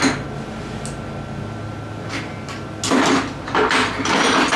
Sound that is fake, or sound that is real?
real